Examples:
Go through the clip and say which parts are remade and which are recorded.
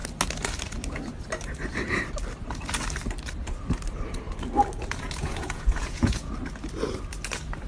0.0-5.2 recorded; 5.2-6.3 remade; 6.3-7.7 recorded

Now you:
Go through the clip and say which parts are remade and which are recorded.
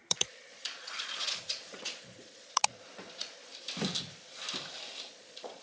0.0-3.5 remade; 3.5-5.0 recorded; 5.0-5.6 remade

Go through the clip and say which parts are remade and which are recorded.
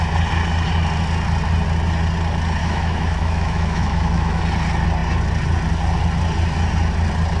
0.0-2.6 recorded; 2.6-4.4 remade; 4.4-7.4 recorded